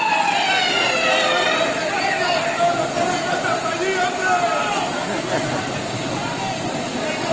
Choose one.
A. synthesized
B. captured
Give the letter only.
B